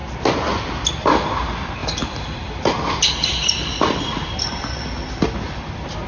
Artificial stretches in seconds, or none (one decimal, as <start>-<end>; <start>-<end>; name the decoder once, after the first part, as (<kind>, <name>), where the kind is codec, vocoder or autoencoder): 1.8-2.5 (vocoder, BigVGAN v2); 3.4-4.4